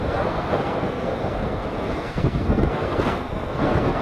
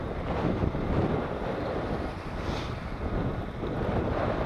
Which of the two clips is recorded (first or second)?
second